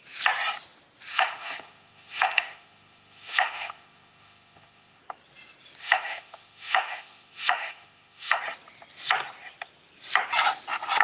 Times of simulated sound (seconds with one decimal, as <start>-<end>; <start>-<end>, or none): 1.1-5.0; 5.8-8.4